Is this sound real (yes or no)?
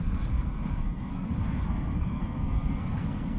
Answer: no